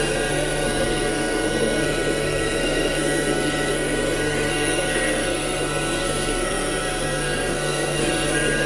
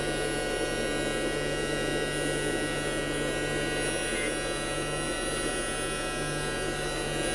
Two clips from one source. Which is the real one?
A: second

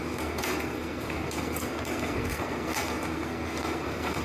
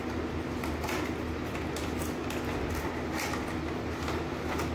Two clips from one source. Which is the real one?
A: second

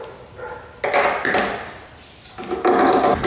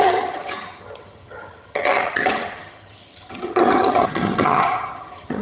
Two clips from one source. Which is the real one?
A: first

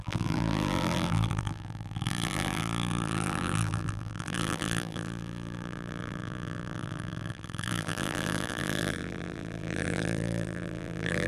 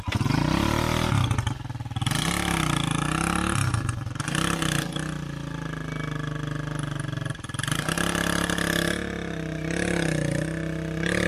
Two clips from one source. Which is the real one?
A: second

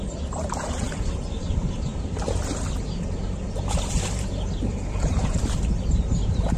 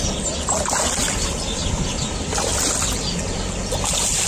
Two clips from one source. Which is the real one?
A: second